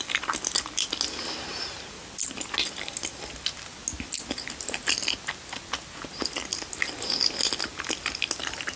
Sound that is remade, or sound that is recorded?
recorded